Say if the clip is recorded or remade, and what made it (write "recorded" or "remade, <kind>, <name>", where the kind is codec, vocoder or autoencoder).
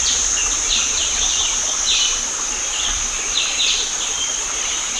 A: recorded